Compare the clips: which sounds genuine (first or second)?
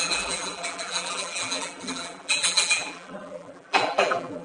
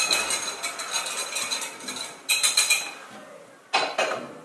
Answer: second